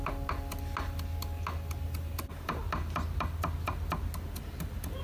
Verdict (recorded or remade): recorded